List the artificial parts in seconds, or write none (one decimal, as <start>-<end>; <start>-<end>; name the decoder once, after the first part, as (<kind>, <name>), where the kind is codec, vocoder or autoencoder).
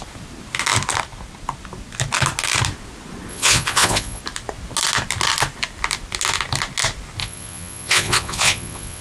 3.3-4.2 (vocoder, Vocos); 7.2-9.0